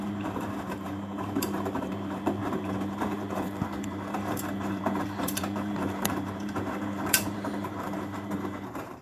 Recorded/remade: remade